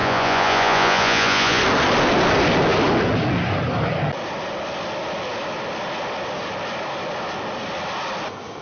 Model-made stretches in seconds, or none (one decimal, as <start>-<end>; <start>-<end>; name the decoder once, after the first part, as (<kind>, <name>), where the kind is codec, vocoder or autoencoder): 0.0-1.6 (vocoder, Vocos)

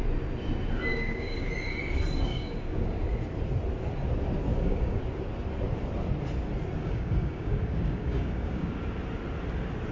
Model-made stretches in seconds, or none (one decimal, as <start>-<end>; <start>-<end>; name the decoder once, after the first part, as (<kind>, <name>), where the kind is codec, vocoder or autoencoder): 0.9-1.5 (codec, DAC); 2.3-3.0; 4.5-5.0; 6.8-8.7

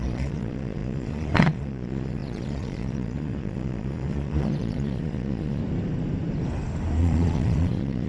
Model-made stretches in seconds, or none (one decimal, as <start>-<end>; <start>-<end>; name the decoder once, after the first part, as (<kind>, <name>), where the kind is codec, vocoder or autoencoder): 0.0-5.6 (vocoder, Vocos); 7.0-8.1